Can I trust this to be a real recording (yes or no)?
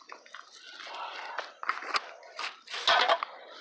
yes